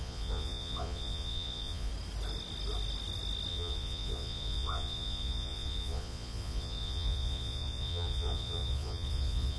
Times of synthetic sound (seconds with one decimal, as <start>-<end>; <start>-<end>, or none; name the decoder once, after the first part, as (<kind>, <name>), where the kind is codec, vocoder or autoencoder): 0.0-1.9 (vocoder, Vocos); 3.5-9.6

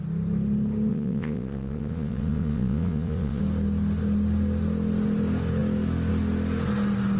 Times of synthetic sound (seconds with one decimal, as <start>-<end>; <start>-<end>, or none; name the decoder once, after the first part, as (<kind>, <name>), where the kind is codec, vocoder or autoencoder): 0.9-3.4 (vocoder, Vocos)

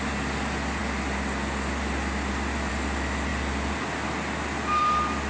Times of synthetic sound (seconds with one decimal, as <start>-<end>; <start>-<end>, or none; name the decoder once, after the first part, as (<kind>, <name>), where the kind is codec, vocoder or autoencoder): none

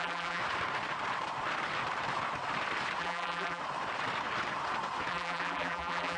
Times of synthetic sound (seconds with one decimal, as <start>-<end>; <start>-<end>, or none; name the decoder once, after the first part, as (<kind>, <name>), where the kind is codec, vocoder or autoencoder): 0.0-0.4 (vocoder, BigVGAN v2); 3.0-3.6; 5.1-6.2